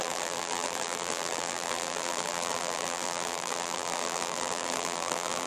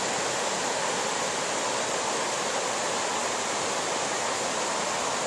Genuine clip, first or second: second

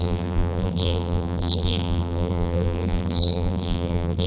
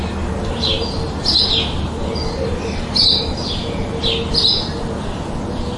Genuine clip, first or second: second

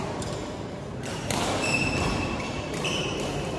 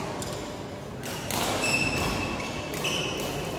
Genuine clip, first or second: second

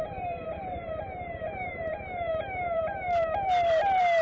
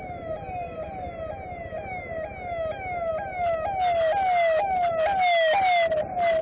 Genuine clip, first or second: second